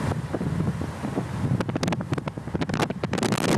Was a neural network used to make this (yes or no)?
no